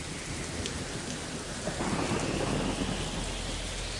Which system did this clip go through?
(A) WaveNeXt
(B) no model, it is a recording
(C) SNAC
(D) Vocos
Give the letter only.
B